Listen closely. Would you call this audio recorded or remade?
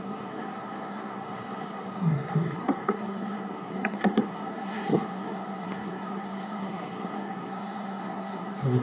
remade